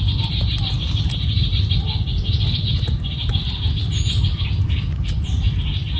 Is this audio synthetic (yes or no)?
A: no